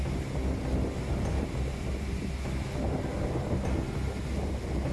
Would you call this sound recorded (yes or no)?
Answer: yes